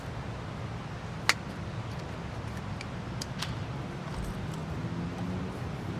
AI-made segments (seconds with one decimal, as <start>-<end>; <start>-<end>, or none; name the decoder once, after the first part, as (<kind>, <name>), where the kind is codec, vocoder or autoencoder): none